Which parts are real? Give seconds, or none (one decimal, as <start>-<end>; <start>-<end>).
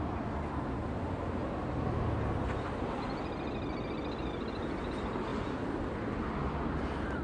0.0-7.2